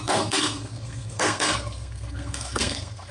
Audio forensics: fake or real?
fake